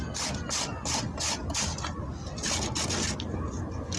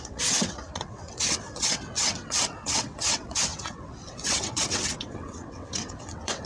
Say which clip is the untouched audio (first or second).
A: first